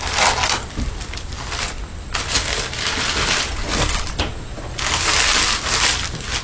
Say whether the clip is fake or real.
real